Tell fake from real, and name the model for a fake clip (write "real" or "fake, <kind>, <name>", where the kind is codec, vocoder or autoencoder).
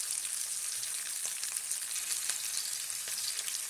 real